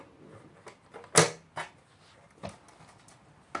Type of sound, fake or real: real